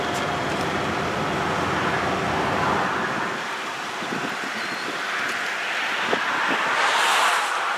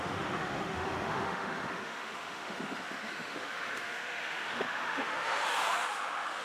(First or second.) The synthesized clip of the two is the second